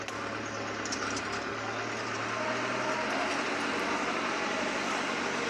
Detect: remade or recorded recorded